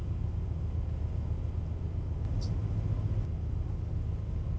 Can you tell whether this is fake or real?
real